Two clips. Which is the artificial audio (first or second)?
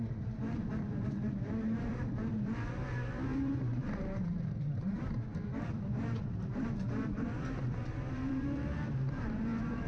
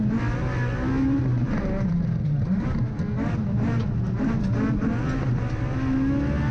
first